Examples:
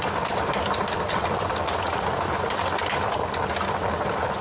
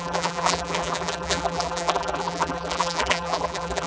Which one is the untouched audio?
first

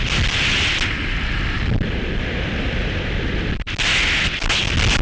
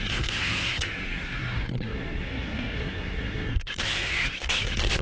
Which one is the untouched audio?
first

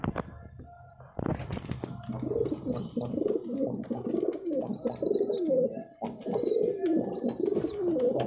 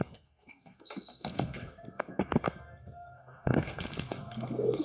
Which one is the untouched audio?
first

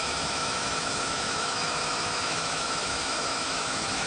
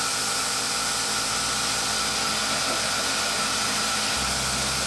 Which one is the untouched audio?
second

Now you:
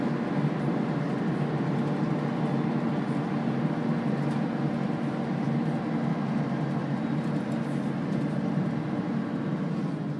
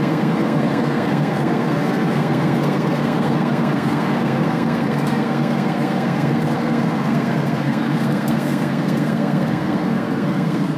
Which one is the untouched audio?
first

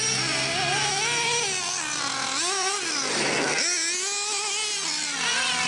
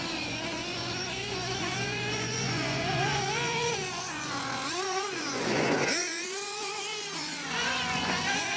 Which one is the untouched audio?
first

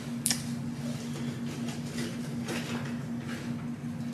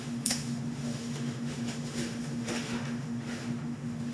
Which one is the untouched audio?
first